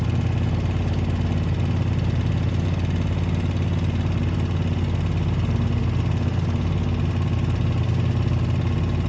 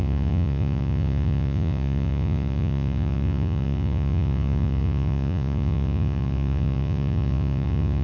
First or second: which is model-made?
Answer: second